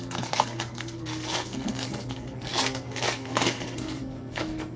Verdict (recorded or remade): remade